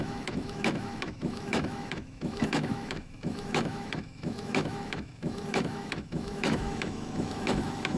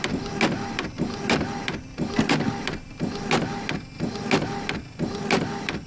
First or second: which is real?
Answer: second